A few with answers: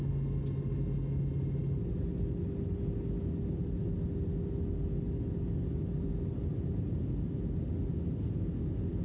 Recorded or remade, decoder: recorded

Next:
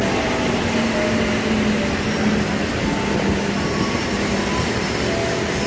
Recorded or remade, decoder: recorded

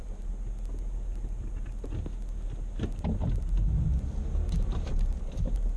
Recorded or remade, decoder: recorded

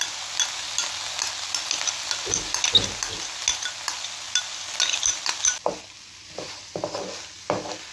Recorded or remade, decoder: recorded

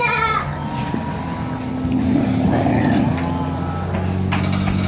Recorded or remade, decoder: recorded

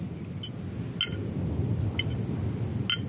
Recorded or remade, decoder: recorded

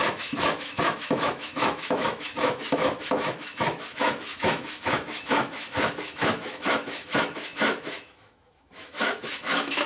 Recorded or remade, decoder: remade, autoencoder, DAC-VAE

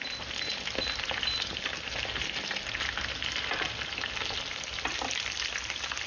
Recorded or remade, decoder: recorded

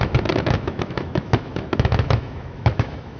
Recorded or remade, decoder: remade, autoencoder, DAC-VAE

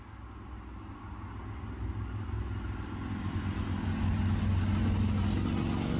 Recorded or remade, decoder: recorded